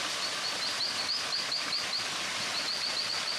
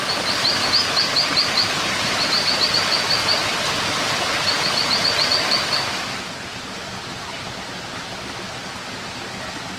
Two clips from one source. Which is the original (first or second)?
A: first